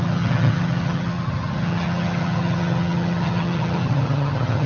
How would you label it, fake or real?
fake